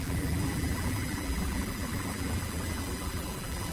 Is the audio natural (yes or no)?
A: no